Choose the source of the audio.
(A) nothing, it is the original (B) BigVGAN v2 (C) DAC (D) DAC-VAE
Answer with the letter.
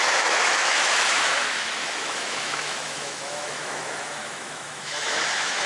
D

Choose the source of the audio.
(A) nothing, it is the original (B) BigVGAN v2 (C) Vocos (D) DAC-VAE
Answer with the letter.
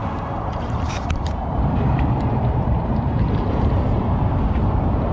B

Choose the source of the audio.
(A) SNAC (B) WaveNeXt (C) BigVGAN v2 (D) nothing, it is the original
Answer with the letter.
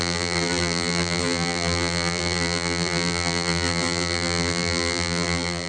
C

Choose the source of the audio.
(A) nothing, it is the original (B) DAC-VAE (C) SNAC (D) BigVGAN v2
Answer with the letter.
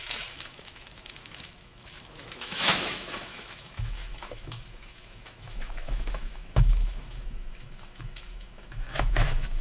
B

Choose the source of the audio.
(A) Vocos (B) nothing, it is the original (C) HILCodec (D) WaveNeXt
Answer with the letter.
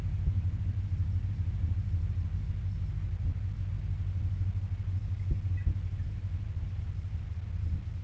B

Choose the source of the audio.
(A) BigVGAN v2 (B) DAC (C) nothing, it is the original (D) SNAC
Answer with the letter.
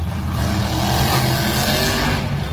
C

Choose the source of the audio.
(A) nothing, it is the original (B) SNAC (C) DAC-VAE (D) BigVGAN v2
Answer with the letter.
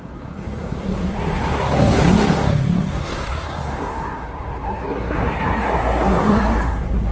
B